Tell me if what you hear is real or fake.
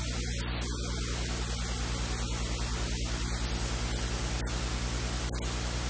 real